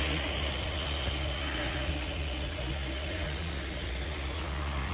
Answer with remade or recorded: remade